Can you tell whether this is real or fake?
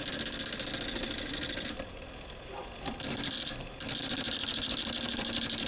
real